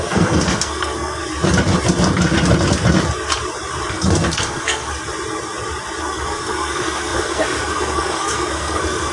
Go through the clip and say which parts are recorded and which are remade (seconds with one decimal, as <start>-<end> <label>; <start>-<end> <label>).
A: 0.0-1.2 remade; 1.2-3.9 recorded; 3.9-4.9 remade; 4.9-6.0 recorded; 6.0-9.1 remade